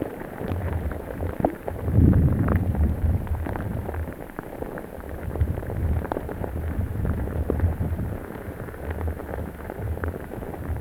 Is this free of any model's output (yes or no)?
no